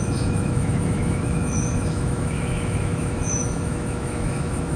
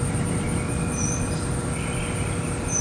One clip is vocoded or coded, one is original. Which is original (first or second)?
second